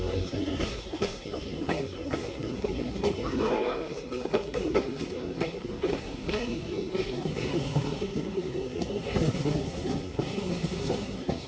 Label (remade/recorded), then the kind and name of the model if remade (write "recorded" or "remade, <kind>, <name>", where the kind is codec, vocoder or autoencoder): remade, codec, SNAC